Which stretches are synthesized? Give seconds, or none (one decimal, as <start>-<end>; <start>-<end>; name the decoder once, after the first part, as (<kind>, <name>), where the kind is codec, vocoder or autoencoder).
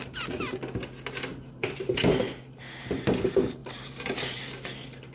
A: 1.3-2.6 (vocoder, BigVGAN v2); 3.6-4.4